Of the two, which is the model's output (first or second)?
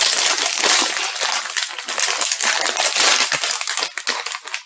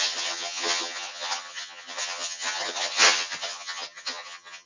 second